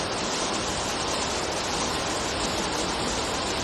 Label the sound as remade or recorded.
recorded